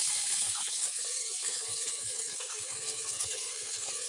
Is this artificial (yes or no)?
yes